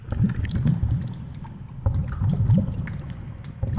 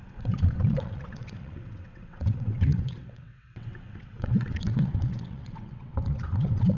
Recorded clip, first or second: first